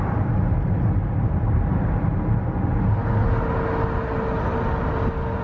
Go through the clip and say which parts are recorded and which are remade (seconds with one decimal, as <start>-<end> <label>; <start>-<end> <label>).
0.0-5.4 recorded